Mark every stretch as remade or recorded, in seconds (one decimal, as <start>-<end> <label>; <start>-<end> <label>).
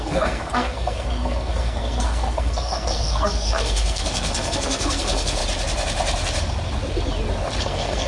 0.0-5.4 remade; 5.4-7.6 recorded; 7.6-8.1 remade